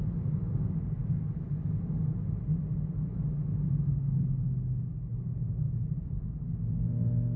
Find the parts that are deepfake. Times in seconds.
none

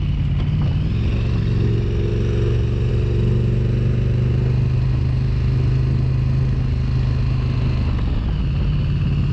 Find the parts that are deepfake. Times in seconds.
none